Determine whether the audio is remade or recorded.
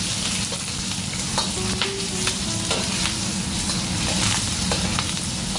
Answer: recorded